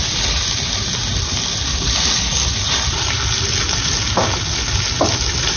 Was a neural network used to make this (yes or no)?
no